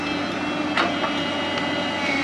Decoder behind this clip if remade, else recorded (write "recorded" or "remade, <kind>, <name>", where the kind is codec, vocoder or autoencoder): recorded